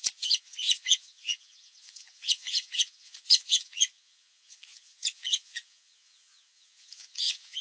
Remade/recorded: remade